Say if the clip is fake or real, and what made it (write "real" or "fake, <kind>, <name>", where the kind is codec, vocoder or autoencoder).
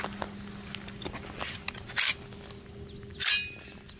real